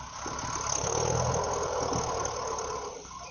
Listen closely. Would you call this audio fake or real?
real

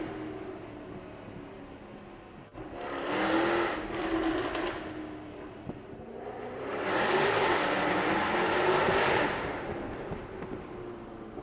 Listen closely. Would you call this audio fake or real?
real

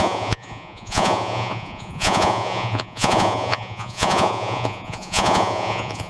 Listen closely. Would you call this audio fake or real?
fake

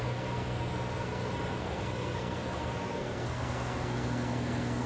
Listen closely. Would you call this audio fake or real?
fake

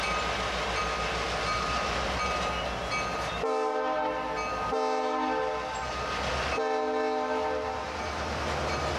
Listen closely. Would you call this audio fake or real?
real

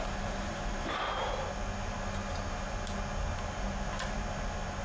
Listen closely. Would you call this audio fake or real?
real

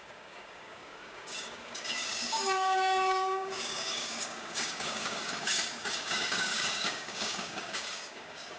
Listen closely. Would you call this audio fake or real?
fake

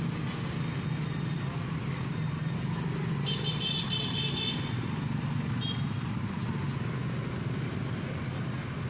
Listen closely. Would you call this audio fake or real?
real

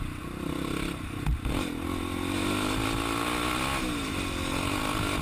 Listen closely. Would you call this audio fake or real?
real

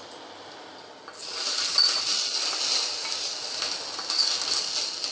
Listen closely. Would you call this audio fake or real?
real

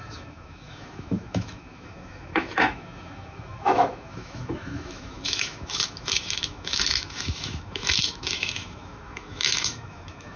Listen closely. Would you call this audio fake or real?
fake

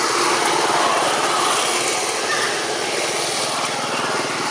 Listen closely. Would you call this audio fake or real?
real